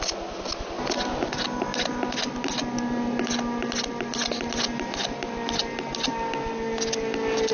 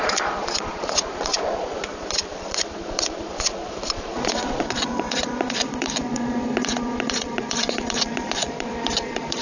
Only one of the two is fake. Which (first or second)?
second